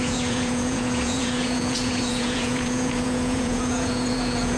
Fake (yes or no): yes